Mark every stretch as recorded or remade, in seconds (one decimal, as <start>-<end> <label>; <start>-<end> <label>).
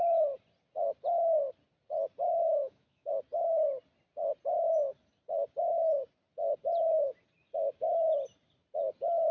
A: 0.0-2.4 recorded; 2.4-3.1 remade; 3.1-9.3 recorded